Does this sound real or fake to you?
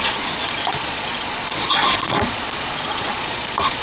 fake